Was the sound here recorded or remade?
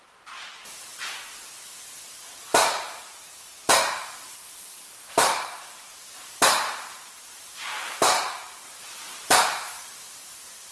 remade